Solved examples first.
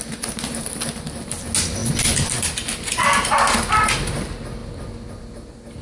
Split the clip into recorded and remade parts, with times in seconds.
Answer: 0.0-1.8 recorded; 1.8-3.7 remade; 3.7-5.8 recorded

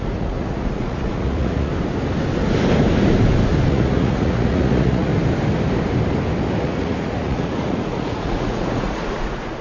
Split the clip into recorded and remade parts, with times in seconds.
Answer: 0.0-1.7 remade; 1.7-3.7 recorded; 3.7-5.1 remade; 5.1-6.6 recorded; 6.6-9.6 remade

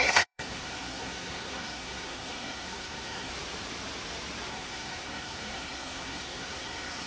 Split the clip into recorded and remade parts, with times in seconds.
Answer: 0.0-3.3 remade; 3.3-4.5 recorded; 4.5-7.1 remade

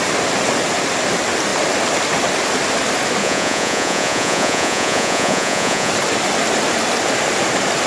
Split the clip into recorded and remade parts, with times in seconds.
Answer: 0.0-3.2 recorded; 3.2-5.9 remade; 5.9-7.9 recorded

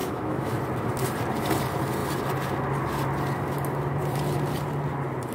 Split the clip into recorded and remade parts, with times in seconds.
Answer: 0.0-0.6 remade; 0.6-5.3 recorded

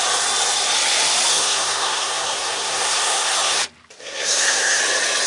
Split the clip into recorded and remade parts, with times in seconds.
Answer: 0.0-1.3 recorded; 1.3-3.6 remade; 3.6-4.0 recorded; 4.0-4.8 remade; 4.8-5.3 recorded

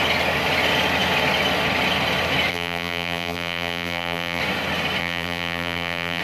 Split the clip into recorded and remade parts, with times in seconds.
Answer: 0.0-2.5 recorded; 2.5-4.4 remade; 4.4-5.0 recorded; 5.0-6.2 remade

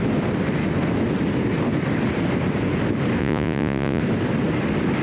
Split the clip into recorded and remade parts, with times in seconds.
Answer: 0.0-3.2 recorded; 3.2-4.0 remade; 4.0-5.0 recorded